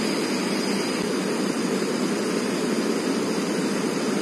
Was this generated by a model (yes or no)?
no